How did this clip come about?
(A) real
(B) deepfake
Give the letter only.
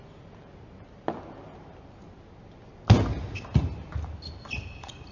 A